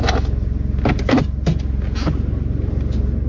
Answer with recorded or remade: recorded